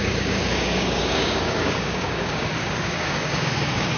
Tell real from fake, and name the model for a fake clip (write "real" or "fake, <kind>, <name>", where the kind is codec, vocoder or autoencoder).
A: fake, codec, DAC